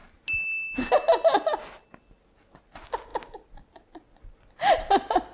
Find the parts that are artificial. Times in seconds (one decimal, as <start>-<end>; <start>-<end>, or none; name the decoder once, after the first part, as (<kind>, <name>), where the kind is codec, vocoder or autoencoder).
none